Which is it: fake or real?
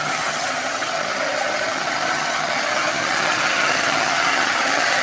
fake